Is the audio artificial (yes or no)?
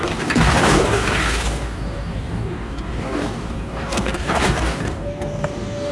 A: yes